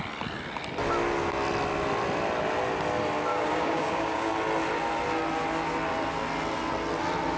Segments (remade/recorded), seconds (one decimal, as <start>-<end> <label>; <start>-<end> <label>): 0.0-3.3 recorded; 3.3-4.3 remade; 4.3-7.4 recorded